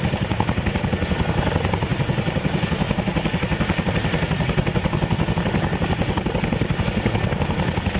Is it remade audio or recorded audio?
recorded